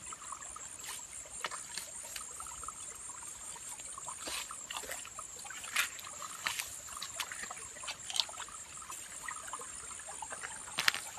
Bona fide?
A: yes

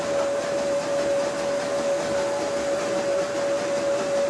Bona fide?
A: yes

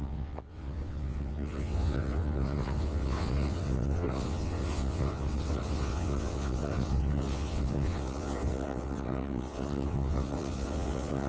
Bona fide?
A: no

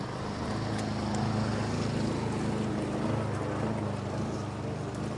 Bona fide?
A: yes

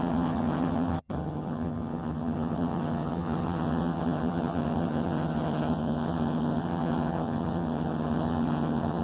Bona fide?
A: no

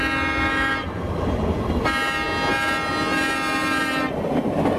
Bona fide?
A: yes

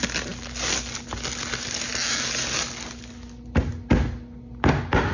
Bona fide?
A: yes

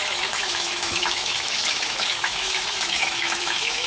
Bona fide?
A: no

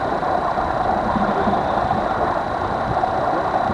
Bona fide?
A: yes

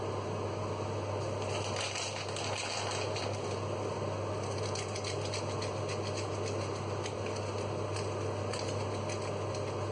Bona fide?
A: yes